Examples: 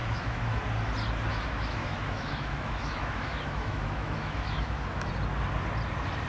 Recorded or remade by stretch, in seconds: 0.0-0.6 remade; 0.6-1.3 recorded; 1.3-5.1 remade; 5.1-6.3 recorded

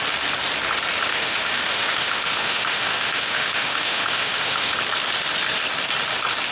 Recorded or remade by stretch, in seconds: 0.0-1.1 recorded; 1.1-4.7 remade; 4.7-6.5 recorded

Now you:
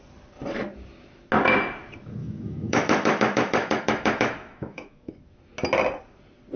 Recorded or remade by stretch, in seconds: 0.0-2.2 recorded; 2.2-5.1 remade; 5.1-6.6 recorded